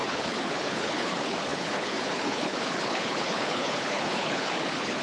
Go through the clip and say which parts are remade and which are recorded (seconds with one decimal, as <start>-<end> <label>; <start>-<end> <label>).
0.0-5.0 remade